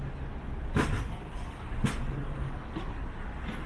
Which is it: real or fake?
real